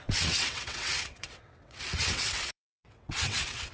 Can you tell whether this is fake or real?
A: fake